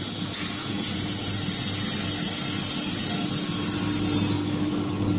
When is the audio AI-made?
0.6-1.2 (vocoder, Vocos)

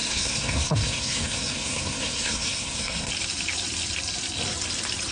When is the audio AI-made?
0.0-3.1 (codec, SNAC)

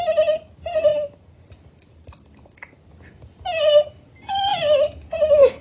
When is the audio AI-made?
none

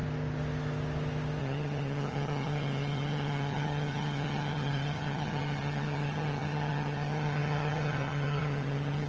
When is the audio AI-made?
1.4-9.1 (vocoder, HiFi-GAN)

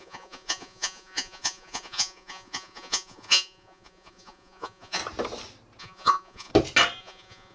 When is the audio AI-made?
0.0-5.0 (vocoder, Vocos); 5.8-6.5; 7.0-7.5

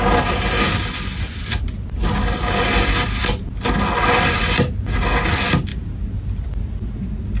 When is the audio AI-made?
none